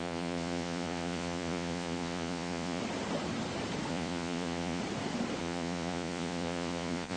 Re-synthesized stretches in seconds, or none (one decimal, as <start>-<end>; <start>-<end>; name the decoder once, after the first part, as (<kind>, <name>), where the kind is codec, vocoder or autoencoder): 0.0-2.8 (vocoder, Vocos); 3.9-4.8; 5.4-7.2